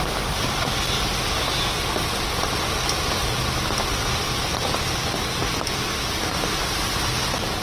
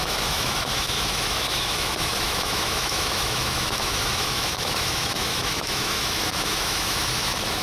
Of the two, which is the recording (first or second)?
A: first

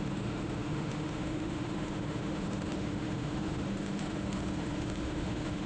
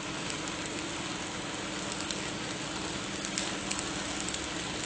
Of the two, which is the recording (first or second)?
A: second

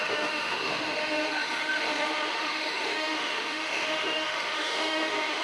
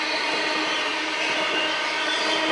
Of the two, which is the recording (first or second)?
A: second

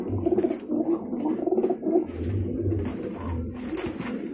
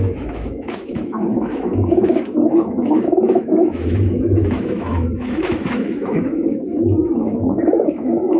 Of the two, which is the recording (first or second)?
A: first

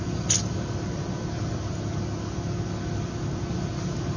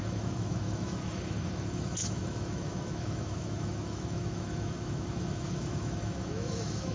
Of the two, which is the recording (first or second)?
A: first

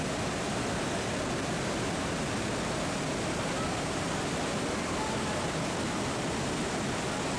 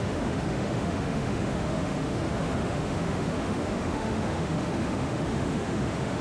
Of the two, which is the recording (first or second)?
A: first